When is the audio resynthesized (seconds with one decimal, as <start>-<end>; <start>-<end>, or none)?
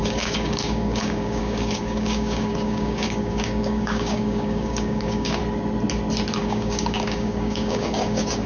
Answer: 0.0-5.4; 6.4-8.5